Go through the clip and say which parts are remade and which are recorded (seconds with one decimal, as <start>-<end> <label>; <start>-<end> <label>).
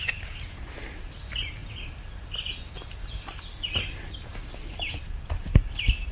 0.0-6.1 recorded